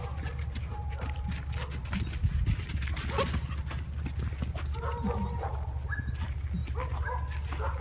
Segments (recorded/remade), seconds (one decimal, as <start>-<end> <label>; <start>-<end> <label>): 0.0-7.8 recorded